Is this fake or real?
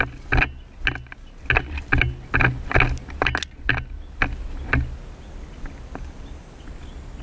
real